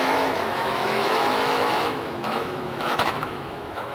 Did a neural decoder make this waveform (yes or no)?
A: yes